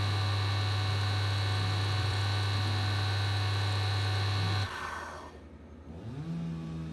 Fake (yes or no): no